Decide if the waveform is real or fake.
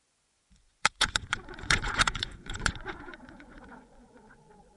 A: fake